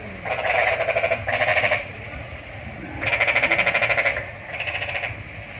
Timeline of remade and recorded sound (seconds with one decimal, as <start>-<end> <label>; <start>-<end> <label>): 0.0-1.5 recorded; 1.5-3.1 remade; 3.1-4.1 recorded; 4.1-4.9 remade; 4.9-5.6 recorded